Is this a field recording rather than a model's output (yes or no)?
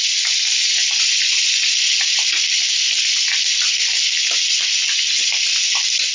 yes